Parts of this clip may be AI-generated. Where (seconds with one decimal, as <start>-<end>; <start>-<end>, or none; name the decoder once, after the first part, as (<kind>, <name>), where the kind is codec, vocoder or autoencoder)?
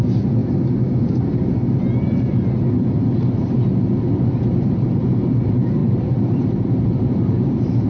0.0-0.4 (vocoder, BigVGAN v2); 4.4-7.9